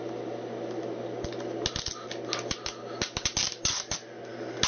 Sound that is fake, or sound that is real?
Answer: real